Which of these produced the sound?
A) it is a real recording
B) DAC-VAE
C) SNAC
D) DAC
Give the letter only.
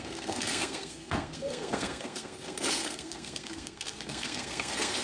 C